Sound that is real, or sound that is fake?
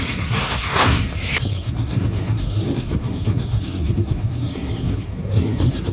fake